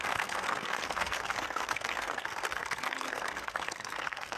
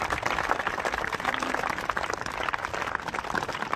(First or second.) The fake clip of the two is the first